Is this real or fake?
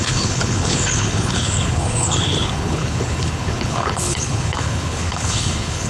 fake